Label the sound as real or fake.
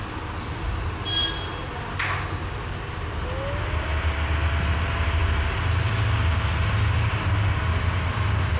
real